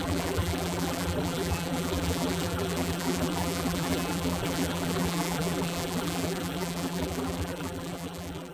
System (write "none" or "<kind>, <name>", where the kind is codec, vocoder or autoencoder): vocoder, BigVGAN v2